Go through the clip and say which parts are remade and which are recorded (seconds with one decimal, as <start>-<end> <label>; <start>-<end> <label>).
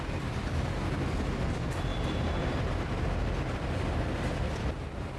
0.0-5.2 recorded